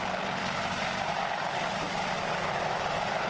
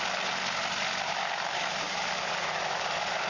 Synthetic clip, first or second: first